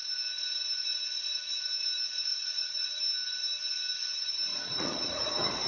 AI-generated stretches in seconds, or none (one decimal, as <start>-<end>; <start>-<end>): 2.3-3.0; 4.5-5.7